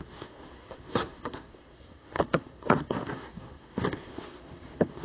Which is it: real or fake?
fake